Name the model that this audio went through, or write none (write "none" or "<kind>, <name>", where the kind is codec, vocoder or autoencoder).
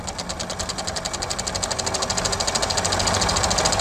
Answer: none